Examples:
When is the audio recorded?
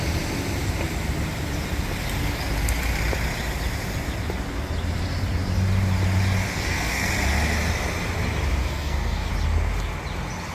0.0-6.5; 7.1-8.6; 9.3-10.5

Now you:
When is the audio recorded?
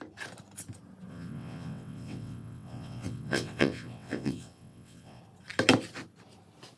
0.0-1.1; 5.2-6.8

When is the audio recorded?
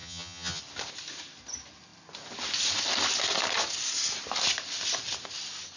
0.6-5.8